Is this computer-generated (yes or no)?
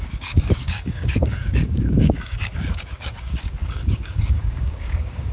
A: yes